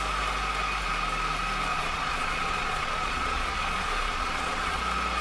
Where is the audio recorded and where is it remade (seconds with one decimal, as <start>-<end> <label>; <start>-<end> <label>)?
0.0-1.7 recorded; 1.7-4.8 remade; 4.8-5.2 recorded